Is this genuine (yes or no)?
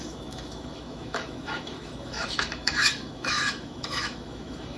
no